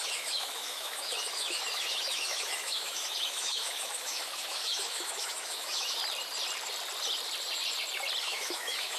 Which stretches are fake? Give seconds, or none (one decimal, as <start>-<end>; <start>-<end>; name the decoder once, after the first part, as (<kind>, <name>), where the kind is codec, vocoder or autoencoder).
0.0-6.0 (autoencoder, DAC-VAE); 8.2-9.0